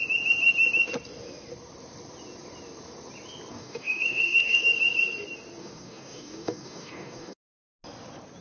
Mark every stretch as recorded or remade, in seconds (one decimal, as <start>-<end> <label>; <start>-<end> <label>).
0.0-3.5 recorded; 3.5-4.7 remade; 4.7-5.6 recorded; 5.6-7.6 remade; 7.6-8.4 recorded